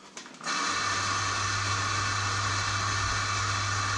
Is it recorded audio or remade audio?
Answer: recorded